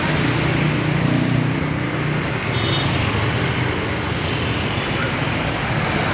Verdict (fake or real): real